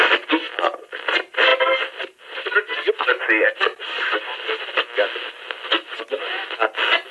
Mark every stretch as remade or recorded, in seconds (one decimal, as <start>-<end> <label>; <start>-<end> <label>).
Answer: 0.0-7.1 recorded